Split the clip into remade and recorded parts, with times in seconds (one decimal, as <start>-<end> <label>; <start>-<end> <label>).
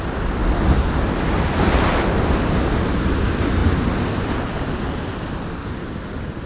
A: 0.0-6.5 recorded